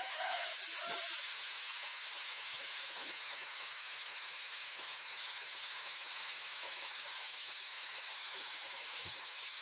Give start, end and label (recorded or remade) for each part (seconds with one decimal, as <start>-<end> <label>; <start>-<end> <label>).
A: 0.0-0.6 remade; 0.6-1.2 recorded; 1.2-9.6 remade